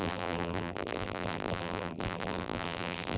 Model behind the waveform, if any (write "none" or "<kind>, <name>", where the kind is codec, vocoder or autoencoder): vocoder, BigVGAN v2